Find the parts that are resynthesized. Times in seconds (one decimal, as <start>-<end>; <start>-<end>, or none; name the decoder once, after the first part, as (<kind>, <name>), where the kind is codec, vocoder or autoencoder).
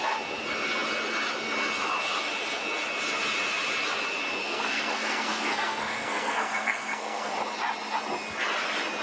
4.4-7.3 (codec, SNAC)